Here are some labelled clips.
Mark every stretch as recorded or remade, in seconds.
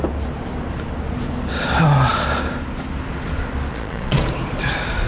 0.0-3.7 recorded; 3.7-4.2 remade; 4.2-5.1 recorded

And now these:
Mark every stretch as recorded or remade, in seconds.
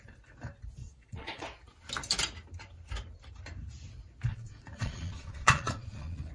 0.0-0.8 recorded; 0.8-1.4 remade; 1.4-4.3 recorded; 4.3-6.3 remade